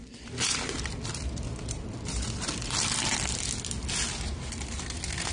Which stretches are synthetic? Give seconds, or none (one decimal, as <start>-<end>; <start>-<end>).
0.0-3.2